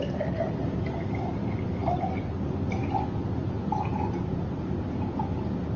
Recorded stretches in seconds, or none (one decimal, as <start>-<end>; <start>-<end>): 0.0-5.8